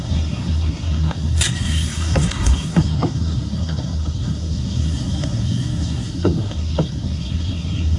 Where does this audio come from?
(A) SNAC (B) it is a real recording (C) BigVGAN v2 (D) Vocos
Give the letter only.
A